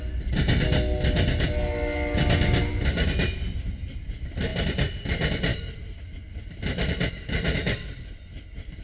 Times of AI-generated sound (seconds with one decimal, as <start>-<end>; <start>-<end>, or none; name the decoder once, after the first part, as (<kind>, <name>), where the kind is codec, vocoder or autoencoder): none